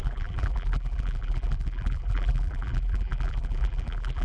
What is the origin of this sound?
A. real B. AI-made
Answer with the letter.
B